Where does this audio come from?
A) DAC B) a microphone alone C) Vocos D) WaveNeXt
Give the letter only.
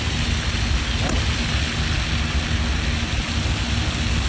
B